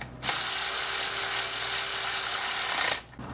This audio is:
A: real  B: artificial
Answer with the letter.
A